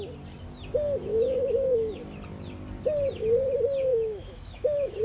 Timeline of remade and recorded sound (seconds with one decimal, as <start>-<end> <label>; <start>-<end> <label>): 0.0-1.1 recorded; 1.1-1.9 remade; 1.9-3.9 recorded; 3.9-5.0 remade